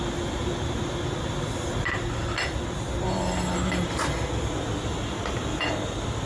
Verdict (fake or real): real